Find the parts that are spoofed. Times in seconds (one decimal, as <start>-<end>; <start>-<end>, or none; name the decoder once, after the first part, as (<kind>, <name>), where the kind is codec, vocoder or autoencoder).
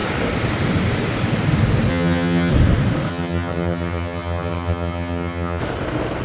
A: 1.9-2.5 (vocoder, HiFi-GAN); 3.1-5.6